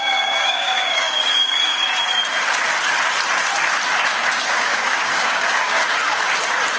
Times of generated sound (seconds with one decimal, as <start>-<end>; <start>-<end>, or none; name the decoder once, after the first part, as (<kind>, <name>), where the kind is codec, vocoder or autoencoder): 0.0-1.9 (codec, DAC); 4.1-5.8